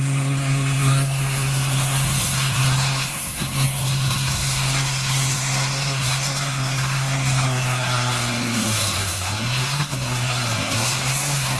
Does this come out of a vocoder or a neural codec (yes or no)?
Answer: yes